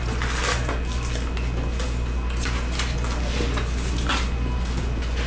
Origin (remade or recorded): recorded